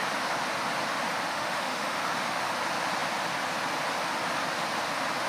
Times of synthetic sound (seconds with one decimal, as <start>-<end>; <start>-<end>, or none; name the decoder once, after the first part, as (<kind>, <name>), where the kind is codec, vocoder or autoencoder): 1.3-2.5 (autoencoder, DAC-VAE)